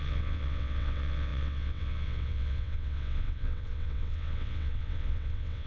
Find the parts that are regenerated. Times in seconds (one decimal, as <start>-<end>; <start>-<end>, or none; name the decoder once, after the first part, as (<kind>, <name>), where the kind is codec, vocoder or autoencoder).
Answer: 0.0-5.7 (vocoder, WaveNeXt)